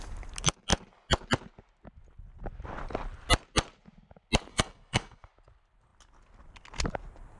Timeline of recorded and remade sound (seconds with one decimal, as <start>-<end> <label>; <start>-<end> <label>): 0.0-4.5 recorded; 4.5-5.3 remade; 5.3-7.4 recorded